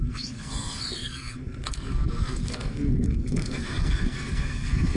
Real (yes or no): no